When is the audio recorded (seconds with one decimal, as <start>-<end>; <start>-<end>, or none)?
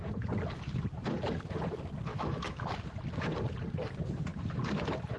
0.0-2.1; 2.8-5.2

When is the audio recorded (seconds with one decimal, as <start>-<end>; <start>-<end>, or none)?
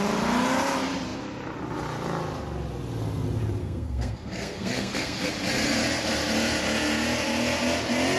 0.0-3.6; 5.3-8.2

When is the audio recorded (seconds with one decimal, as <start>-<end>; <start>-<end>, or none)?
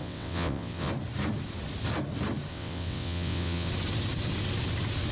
0.9-2.5; 3.7-5.1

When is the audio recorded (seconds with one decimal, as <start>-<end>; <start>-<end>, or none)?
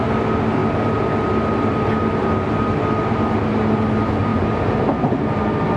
4.3-5.8